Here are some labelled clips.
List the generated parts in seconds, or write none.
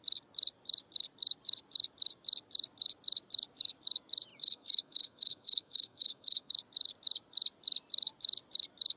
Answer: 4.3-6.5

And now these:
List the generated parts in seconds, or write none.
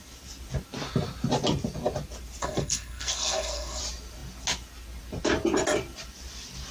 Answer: 2.4-3.8